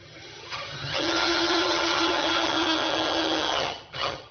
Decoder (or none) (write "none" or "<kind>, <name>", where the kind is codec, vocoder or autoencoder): vocoder, HiFi-GAN